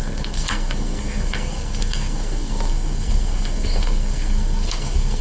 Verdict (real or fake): fake